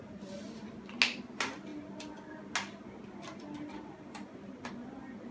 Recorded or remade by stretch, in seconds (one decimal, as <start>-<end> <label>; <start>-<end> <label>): 0.0-5.3 recorded